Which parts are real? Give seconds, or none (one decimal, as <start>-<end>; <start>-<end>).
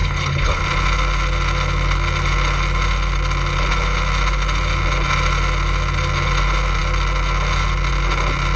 0.6-8.6